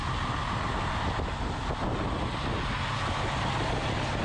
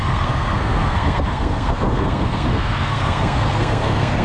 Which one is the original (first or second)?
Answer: first